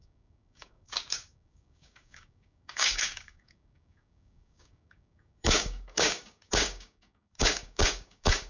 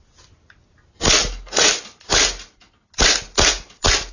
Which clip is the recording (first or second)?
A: second